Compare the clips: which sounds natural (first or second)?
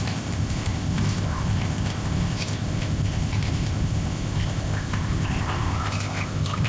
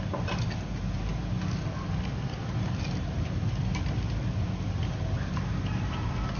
second